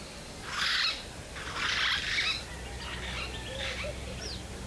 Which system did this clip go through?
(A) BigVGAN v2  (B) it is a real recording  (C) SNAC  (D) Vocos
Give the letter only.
B